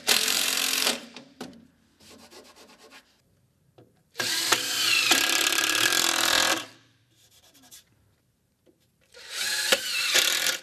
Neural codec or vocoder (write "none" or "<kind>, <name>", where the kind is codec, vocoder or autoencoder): vocoder, BigVGAN v2